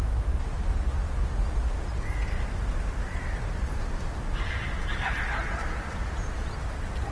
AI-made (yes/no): no